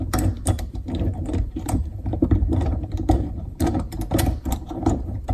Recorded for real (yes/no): no